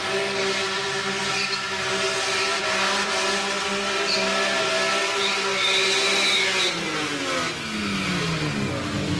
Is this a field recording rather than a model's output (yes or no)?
yes